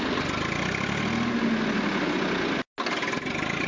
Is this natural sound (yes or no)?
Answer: yes